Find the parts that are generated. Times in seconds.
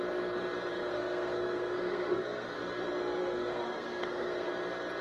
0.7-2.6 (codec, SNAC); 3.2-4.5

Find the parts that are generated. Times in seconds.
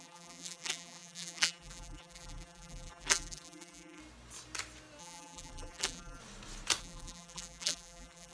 0.0-4.0 (vocoder, BigVGAN v2); 5.0-6.2; 6.8-8.3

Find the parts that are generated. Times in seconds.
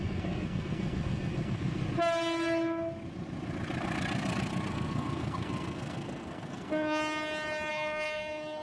0.0-1.8 (codec, SNAC); 4.7-7.0; 7.7-8.6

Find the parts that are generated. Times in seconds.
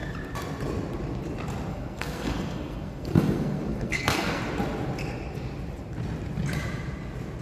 1.7-4.4 (codec, SNAC)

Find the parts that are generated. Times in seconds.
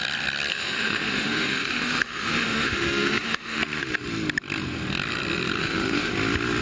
0.5-3.6 (autoencoder, DAC-VAE); 5.6-6.1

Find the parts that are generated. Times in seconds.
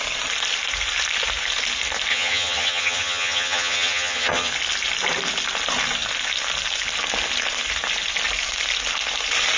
2.1-4.5 (vocoder, HiFi-GAN)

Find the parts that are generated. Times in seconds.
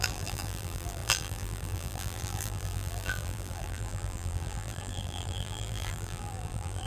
0.0-6.9 (vocoder, BigVGAN v2)